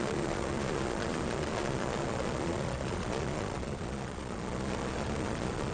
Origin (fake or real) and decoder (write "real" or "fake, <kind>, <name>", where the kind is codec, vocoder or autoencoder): fake, vocoder, Vocos